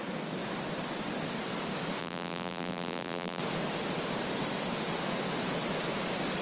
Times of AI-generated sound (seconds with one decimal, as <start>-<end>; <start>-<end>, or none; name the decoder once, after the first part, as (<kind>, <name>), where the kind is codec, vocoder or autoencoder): 2.0-3.4 (vocoder, BigVGAN v2)